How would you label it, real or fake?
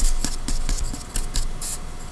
real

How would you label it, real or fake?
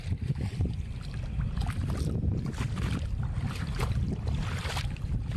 fake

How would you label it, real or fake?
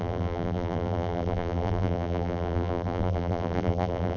fake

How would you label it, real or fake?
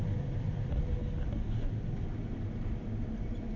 real